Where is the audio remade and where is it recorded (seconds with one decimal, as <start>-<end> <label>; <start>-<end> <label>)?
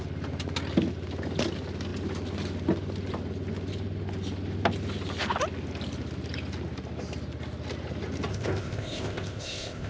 0.0-8.3 recorded; 8.3-9.9 remade